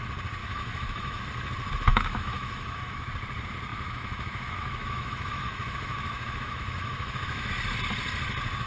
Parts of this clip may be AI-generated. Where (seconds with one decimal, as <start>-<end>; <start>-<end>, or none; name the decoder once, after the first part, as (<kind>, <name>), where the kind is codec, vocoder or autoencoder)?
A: 0.4-1.2 (autoencoder, DAC-VAE); 1.9-3.1; 3.7-7.5